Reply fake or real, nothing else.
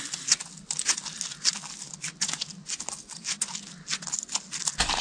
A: real